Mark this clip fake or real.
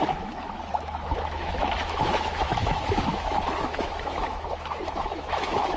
fake